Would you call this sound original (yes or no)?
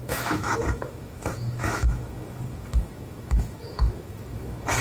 no